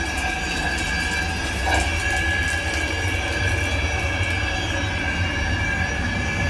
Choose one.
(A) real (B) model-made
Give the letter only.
A